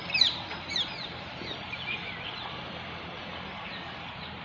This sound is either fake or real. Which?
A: fake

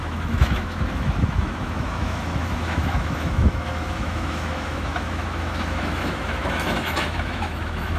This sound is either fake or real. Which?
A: fake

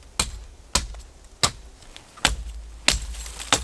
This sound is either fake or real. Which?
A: real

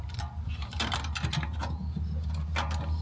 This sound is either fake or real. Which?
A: real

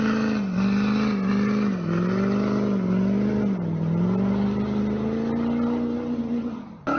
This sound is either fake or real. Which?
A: real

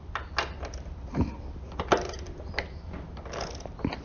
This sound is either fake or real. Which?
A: real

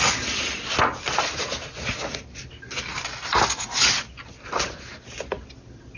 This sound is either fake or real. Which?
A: real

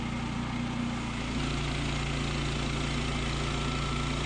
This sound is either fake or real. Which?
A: real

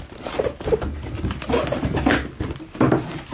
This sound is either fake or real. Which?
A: real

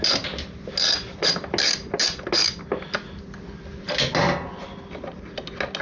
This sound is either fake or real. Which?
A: real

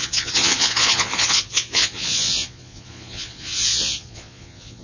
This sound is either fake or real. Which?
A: fake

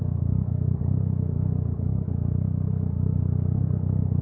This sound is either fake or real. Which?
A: fake